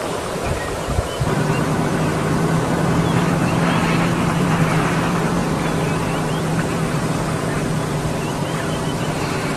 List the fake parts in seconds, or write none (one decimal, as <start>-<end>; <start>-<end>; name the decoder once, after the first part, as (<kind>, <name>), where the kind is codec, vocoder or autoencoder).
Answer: 0.0-9.6 (vocoder, BigVGAN v2)

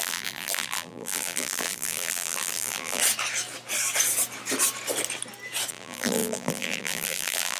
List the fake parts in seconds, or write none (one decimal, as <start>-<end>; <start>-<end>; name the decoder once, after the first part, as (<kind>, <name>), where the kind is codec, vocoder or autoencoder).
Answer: 0.0-3.0 (vocoder, BigVGAN v2); 5.7-7.6